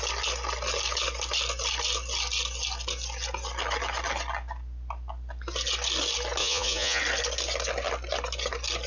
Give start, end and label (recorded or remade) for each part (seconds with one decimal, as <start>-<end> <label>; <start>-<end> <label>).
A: 0.0-6.4 recorded; 6.4-7.0 remade; 7.0-8.9 recorded